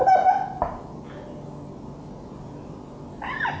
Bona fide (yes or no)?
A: yes